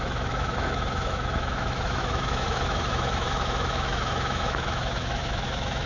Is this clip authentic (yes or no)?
no